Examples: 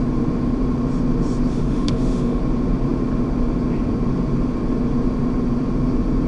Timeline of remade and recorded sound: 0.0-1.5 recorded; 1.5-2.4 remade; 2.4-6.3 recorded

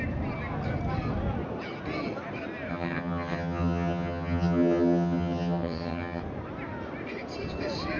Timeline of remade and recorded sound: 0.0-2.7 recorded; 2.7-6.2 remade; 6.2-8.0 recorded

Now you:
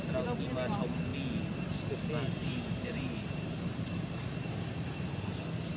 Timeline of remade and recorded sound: 0.0-2.4 recorded; 2.4-5.1 remade; 5.1-5.8 recorded

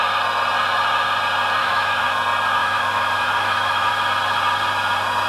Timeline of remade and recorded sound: 0.0-1.6 recorded; 1.6-2.1 remade; 2.1-2.6 recorded; 2.6-3.9 remade; 3.9-5.3 recorded

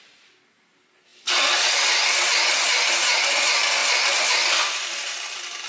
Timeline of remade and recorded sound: 0.0-1.1 recorded; 1.1-2.9 remade; 2.9-3.8 recorded; 3.8-5.7 remade